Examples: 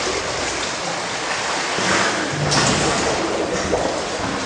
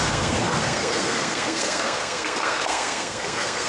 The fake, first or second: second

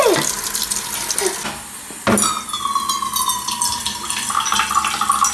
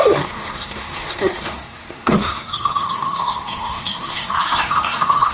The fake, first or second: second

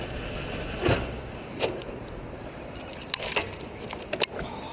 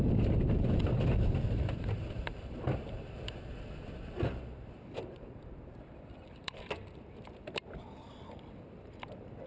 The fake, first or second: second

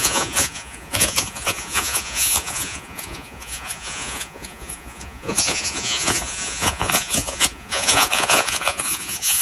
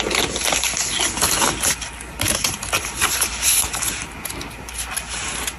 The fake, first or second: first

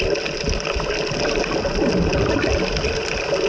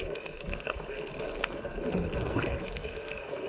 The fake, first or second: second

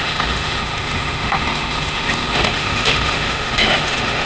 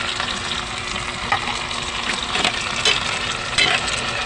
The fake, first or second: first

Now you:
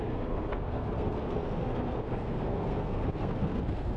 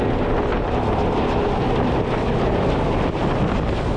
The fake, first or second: first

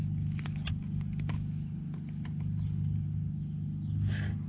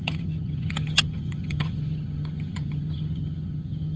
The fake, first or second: second